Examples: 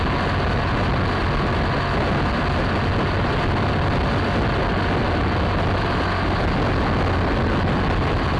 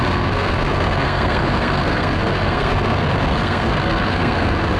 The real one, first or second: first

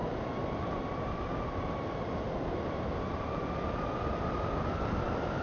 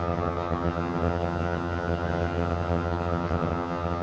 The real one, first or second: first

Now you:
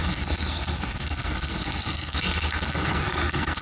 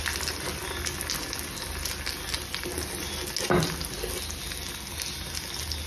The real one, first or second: second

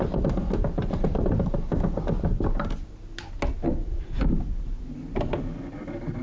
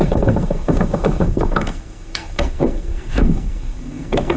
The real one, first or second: first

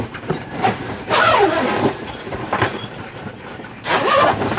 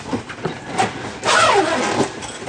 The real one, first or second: second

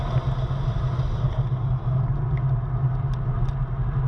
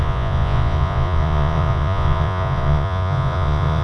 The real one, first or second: first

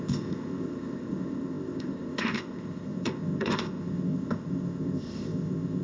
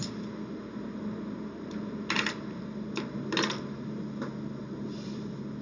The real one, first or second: second